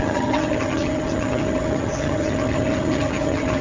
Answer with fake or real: fake